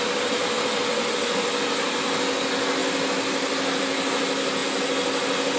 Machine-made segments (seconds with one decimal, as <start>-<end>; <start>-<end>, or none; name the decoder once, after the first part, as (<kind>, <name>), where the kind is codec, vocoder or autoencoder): none